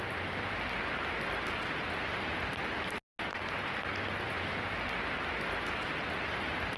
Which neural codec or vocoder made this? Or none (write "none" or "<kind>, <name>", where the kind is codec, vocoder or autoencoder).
none